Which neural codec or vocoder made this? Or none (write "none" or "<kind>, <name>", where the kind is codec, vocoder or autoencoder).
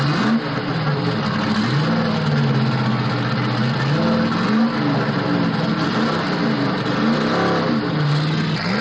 none